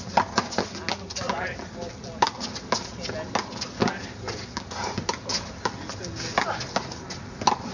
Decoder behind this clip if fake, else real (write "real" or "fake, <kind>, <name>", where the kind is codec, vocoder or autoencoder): real